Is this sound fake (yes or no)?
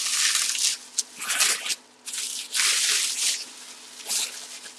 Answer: no